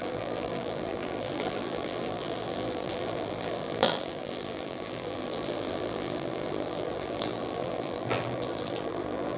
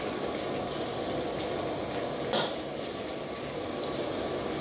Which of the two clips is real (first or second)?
second